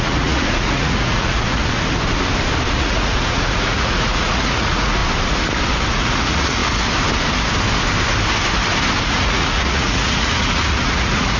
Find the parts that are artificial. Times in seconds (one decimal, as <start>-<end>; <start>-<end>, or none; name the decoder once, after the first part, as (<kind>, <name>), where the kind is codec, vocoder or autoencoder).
0.0-1.6 (vocoder, Vocos); 2.7-5.0; 5.9-6.6; 9.0-11.4